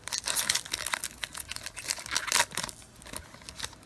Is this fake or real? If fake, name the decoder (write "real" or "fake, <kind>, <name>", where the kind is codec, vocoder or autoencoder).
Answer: real